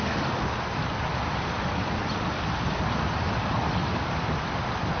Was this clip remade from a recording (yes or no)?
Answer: no